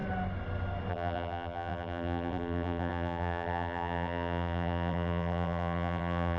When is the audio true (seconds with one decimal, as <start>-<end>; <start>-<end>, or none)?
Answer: 0.0-0.9